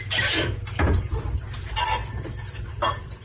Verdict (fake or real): fake